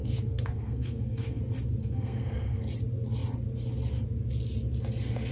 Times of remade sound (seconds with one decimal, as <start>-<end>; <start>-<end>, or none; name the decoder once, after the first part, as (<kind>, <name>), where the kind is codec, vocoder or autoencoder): 0.0-1.4 (codec, SNAC); 1.8-2.6